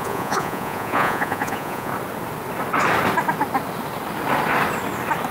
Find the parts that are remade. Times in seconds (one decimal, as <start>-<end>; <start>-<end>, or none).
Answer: 0.0-1.9